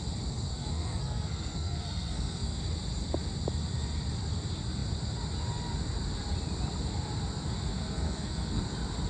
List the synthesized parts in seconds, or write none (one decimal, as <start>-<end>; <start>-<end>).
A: 0.5-2.6; 7.7-8.6